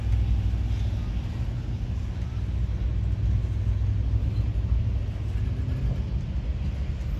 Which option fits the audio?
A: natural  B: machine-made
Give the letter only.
A